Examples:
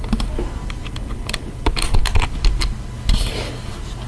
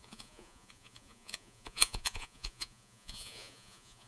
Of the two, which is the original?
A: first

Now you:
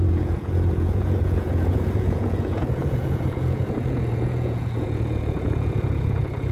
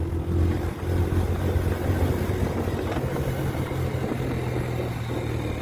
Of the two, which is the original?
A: second